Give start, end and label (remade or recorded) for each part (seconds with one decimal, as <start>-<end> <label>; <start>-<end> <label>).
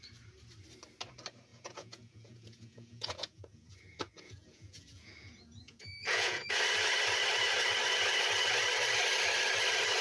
0.0-1.5 recorded; 1.5-6.5 remade; 6.5-10.0 recorded